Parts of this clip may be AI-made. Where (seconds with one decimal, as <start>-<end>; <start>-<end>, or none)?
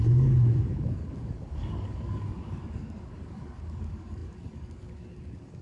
0.0-5.6